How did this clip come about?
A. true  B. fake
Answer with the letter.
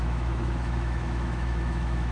B